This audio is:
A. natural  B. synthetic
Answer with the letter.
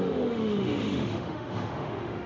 B